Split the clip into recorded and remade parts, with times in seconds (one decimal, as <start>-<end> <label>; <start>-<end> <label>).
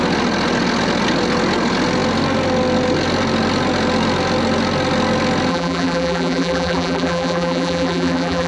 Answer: 0.0-5.5 recorded; 5.5-8.5 remade